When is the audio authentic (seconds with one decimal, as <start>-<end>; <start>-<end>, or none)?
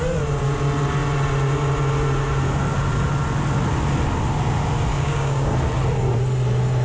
0.0-4.9; 5.5-6.8